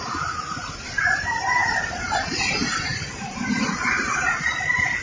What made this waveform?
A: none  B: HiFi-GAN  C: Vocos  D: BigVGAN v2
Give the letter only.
D